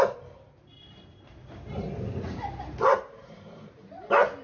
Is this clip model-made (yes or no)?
no